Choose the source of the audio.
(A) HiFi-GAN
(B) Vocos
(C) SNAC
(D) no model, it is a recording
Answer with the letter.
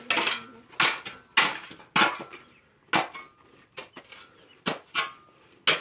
D